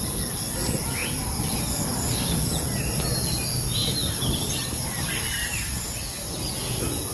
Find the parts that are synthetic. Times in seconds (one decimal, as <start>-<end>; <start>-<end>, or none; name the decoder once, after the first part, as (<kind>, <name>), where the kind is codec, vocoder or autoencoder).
none